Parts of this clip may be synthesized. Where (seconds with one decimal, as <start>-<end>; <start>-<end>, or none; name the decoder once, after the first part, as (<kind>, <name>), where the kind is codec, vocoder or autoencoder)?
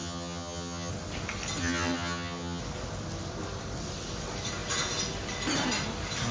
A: 0.0-0.9 (vocoder, HiFi-GAN); 1.6-2.6